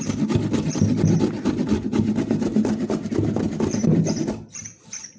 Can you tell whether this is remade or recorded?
recorded